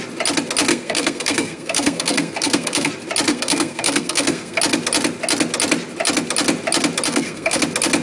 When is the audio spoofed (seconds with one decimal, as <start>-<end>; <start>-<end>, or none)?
0.7-2.9; 3.3-4.6; 7.1-7.6